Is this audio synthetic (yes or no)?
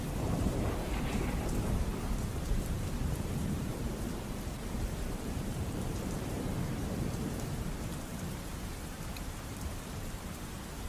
yes